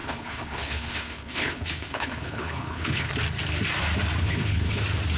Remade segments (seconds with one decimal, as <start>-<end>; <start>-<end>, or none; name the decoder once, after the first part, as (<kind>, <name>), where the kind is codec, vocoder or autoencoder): 0.0-3.1 (codec, HILCodec); 4.2-4.8